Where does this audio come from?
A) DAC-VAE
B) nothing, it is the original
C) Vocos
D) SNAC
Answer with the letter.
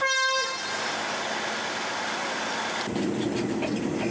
B